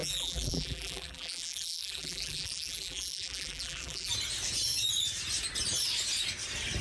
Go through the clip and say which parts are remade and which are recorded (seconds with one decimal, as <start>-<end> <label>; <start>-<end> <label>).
0.0-4.1 remade; 4.1-6.8 recorded